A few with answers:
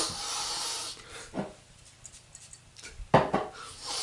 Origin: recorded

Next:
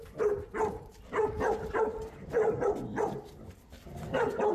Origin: remade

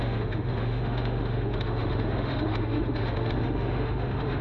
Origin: remade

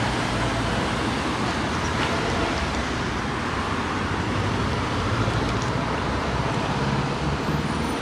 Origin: remade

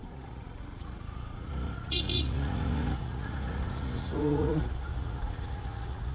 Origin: remade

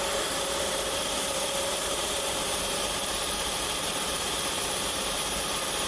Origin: remade